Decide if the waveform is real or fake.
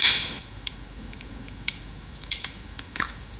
fake